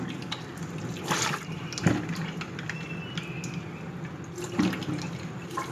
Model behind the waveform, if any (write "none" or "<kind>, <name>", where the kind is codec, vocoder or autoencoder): none